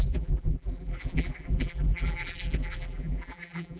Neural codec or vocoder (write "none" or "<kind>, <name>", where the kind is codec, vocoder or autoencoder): vocoder, BigVGAN v2